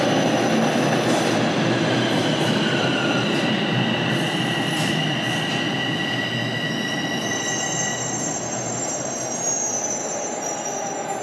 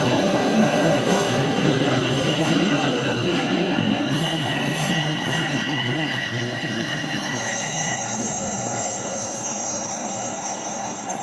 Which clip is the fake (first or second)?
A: second